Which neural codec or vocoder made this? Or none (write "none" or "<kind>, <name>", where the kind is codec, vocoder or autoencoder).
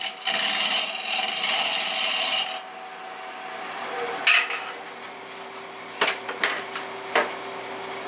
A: none